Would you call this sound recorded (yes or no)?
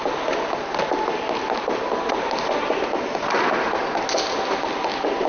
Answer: yes